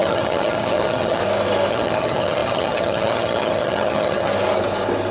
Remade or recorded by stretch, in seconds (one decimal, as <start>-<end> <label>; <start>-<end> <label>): 0.0-1.2 remade; 1.2-1.7 recorded; 1.7-4.3 remade; 4.3-5.1 recorded